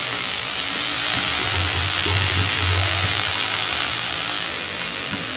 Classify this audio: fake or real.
fake